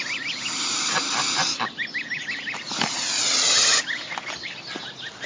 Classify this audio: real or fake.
real